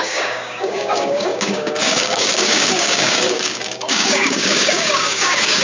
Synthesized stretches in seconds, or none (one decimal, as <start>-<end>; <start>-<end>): 0.0-5.6